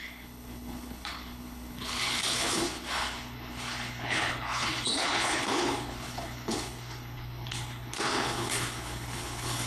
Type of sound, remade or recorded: remade